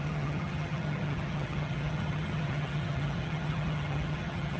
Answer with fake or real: fake